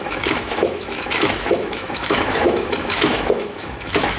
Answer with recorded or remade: remade